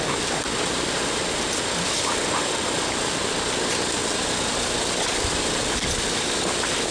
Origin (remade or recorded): recorded